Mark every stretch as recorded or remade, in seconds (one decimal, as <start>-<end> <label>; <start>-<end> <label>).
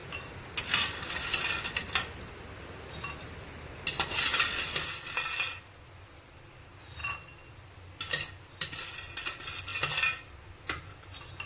0.0-11.5 recorded